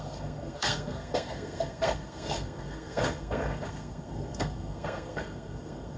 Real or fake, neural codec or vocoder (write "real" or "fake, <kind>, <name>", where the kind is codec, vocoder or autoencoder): fake, codec, SNAC